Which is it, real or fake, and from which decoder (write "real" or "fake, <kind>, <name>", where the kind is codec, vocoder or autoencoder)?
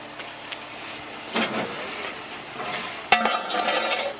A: real